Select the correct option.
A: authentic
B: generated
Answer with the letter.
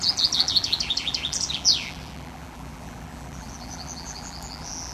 B